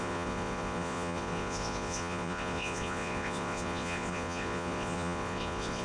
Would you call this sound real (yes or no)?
no